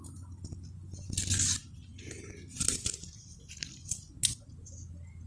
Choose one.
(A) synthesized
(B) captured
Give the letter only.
B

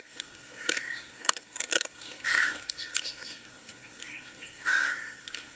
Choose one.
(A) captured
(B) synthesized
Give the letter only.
B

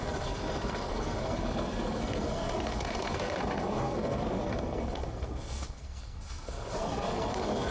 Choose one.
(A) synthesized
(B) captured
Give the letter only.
A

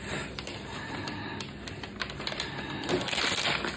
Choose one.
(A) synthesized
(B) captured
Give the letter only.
B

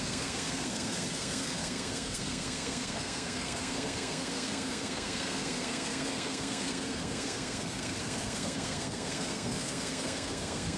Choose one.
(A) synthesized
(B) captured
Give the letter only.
A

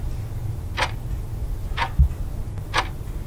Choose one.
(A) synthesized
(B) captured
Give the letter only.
B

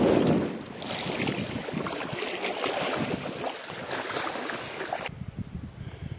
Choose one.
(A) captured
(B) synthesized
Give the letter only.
A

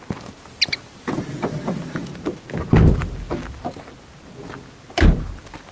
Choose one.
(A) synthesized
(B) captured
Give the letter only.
B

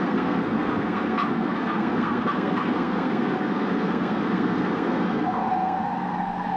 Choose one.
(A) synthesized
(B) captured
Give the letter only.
A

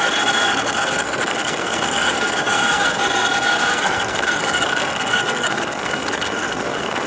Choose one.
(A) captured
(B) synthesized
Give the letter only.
B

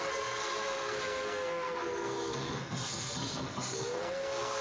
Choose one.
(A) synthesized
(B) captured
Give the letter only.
A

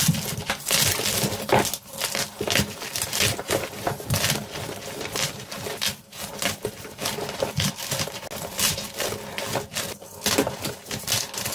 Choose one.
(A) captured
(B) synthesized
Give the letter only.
A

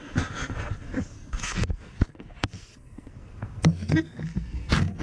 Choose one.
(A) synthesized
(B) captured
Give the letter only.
A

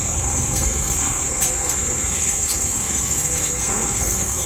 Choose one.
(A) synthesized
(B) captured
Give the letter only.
A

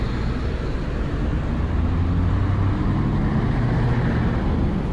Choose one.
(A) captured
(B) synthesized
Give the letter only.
A